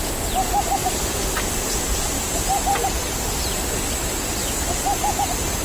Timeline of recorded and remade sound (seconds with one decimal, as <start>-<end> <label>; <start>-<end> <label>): 0.0-0.8 recorded; 0.8-2.5 remade; 2.5-5.6 recorded